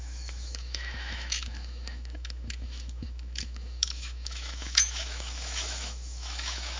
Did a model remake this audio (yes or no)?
yes